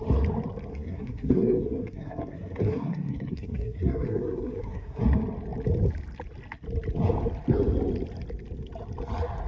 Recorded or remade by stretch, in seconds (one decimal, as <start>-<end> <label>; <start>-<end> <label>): 0.0-0.7 recorded; 0.7-5.0 remade; 5.0-9.5 recorded